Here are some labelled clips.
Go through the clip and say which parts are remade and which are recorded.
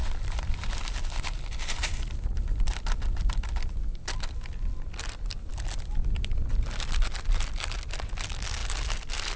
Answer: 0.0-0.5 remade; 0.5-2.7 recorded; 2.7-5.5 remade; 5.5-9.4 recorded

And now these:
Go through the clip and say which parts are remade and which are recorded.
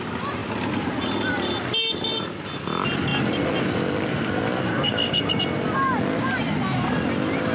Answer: 0.0-4.7 recorded; 4.7-5.4 remade; 5.4-7.5 recorded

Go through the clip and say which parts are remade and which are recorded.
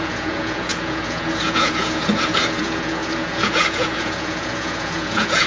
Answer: 0.0-5.5 remade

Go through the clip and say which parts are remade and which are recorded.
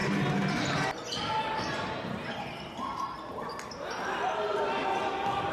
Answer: 0.0-5.5 recorded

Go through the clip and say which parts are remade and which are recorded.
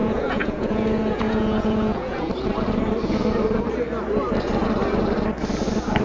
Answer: 0.0-2.3 remade; 2.3-6.0 recorded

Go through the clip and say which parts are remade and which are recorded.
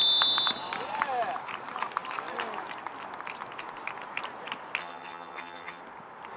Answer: 0.0-4.8 recorded; 4.8-5.8 remade; 5.8-6.4 recorded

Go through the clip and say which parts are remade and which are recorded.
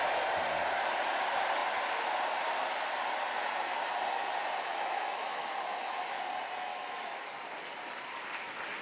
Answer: 0.0-4.7 recorded; 4.7-6.2 remade; 6.2-6.7 recorded; 6.7-7.3 remade; 7.3-8.8 recorded